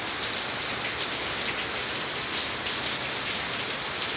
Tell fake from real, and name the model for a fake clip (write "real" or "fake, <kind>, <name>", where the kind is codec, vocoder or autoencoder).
real